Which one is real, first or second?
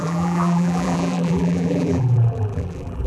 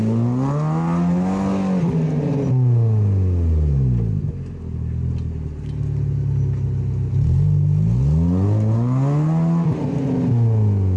second